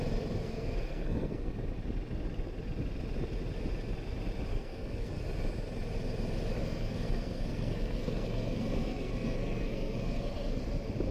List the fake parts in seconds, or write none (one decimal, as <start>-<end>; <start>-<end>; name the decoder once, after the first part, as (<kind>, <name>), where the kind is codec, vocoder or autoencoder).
0.4-1.5 (codec, SNAC); 4.5-5.2; 6.6-10.6